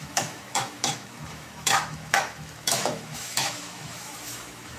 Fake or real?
fake